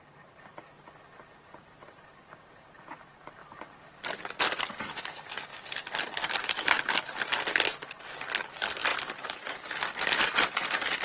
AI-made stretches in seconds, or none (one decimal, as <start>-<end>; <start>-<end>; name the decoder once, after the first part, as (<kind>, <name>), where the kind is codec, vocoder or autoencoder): 0.0-5.5 (vocoder, BigVGAN v2); 8.2-11.0